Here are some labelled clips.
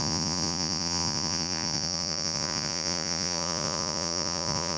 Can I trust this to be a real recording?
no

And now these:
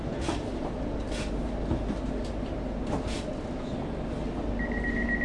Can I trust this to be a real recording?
yes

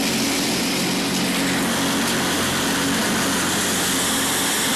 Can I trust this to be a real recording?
yes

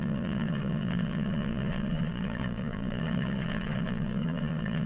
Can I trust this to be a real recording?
no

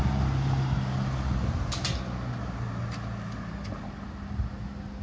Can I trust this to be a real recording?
yes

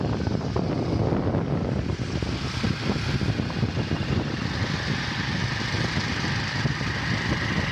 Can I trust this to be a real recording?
yes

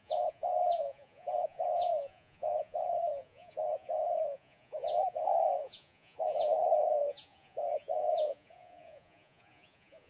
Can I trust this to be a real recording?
no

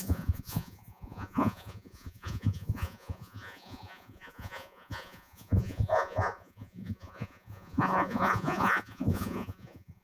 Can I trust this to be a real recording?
no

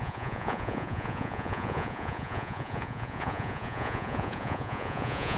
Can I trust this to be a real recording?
no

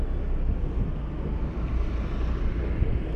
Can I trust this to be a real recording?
yes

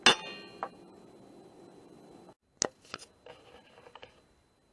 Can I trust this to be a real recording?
yes